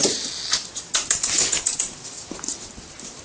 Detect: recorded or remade recorded